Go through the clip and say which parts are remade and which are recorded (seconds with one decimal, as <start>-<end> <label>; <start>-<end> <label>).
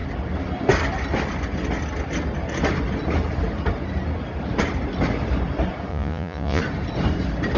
0.0-5.9 recorded; 5.9-6.6 remade; 6.6-7.6 recorded